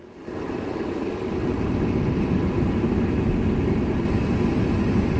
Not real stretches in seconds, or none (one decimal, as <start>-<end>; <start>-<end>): none